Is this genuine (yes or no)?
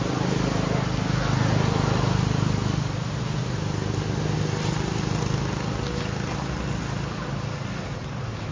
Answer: yes